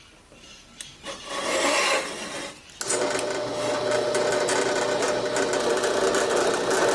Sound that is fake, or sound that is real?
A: real